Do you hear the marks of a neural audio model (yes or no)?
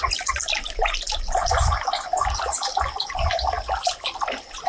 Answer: no